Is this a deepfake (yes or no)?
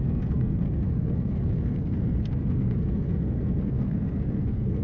yes